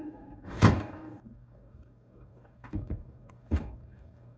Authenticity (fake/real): fake